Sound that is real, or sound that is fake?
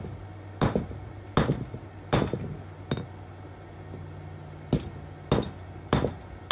real